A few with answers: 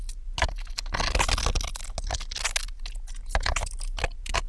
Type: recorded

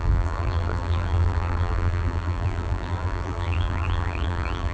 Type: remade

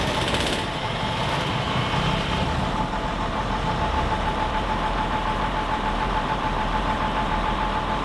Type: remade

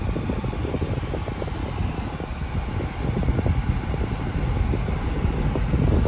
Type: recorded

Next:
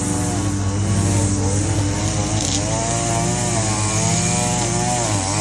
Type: recorded